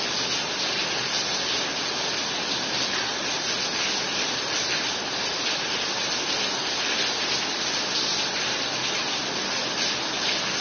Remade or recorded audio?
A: recorded